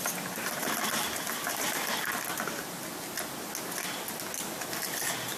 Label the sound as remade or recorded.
recorded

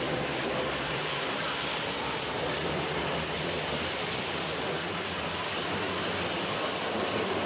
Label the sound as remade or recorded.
recorded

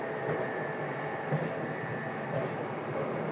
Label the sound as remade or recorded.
recorded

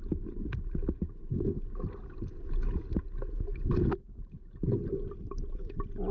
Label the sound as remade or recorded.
recorded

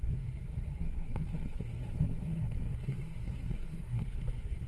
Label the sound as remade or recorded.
remade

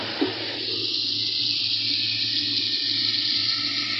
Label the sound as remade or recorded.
recorded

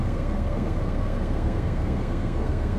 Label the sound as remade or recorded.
remade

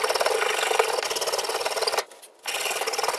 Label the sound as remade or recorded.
recorded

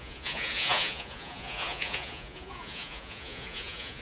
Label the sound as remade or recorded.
remade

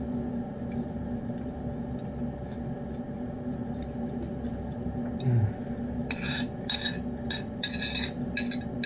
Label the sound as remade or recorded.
recorded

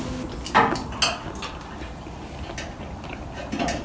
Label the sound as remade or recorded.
recorded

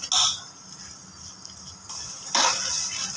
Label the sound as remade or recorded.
recorded